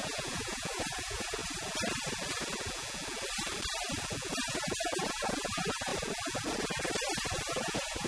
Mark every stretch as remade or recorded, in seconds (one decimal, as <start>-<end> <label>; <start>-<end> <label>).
0.0-1.4 remade; 1.4-4.3 recorded; 4.3-5.9 remade; 5.9-7.5 recorded; 7.5-8.1 remade